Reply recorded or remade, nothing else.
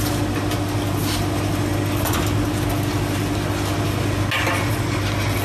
recorded